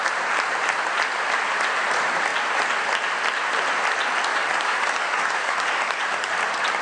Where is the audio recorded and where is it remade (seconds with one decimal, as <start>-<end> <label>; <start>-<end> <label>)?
0.0-4.3 recorded; 4.3-6.3 remade; 6.3-6.8 recorded